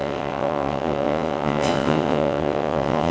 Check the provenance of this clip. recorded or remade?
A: remade